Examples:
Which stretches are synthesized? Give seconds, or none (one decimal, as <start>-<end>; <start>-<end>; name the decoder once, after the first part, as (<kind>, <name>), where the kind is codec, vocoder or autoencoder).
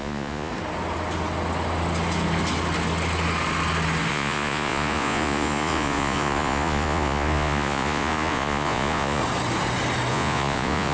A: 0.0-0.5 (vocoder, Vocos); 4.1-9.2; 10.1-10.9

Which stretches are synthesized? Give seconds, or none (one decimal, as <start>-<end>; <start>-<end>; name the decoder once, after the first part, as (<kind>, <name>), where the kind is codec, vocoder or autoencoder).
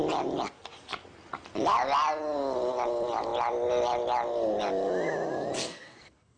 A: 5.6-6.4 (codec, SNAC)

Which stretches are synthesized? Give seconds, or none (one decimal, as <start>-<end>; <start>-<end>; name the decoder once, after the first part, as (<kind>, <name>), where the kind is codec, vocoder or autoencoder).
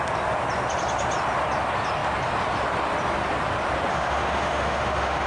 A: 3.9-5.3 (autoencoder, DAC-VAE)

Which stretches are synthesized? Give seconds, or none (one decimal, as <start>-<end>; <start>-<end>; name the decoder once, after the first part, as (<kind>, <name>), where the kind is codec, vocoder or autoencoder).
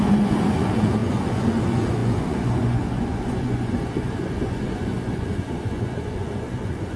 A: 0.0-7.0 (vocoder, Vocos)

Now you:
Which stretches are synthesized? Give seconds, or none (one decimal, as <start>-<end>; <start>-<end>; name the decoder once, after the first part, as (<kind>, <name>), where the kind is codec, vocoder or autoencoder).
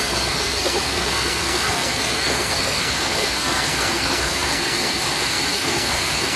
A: 0.0-6.4 (codec, SNAC)